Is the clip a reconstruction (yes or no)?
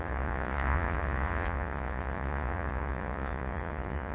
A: yes